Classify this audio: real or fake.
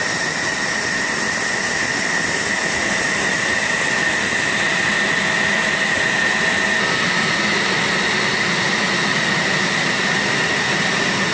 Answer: real